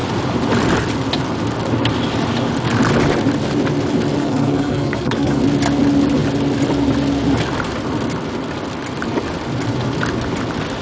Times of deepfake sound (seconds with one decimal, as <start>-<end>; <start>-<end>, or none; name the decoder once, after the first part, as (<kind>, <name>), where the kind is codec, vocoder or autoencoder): 4.2-5.4 (codec, SNAC)